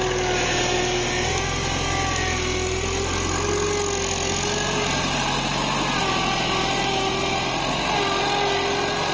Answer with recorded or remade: recorded